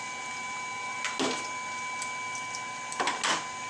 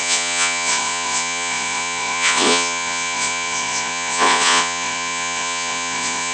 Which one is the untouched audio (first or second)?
first